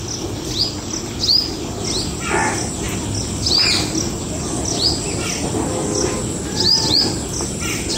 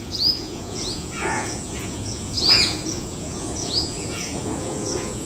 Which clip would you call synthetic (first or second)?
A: second